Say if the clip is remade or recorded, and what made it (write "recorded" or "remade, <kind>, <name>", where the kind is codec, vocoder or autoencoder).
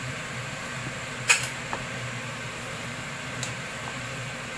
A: remade, vocoder, BigVGAN v2